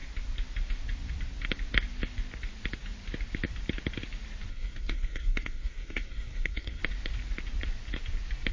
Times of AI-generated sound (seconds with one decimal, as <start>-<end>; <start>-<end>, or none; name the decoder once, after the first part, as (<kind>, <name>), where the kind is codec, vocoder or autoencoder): 4.5-6.8 (codec, SNAC)